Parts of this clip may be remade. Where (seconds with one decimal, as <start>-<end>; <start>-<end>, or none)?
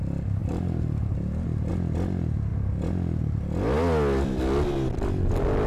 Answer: 0.4-1.7